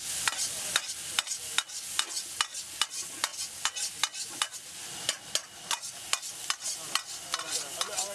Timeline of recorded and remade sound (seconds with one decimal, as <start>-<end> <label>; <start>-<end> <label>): 0.0-8.1 recorded